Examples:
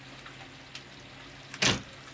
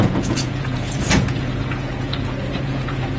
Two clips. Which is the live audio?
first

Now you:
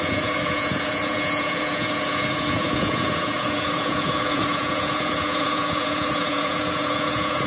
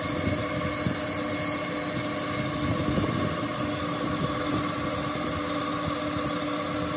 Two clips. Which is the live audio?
second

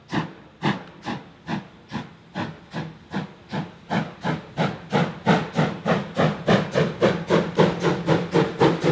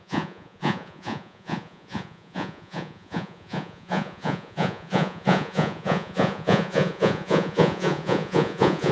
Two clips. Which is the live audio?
first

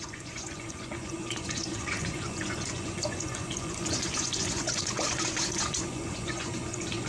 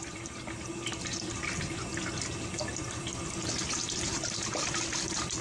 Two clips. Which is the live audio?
second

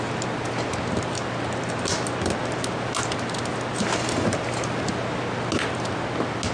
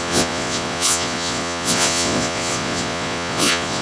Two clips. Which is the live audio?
first